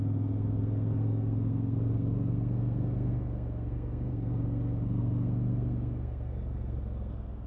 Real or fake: fake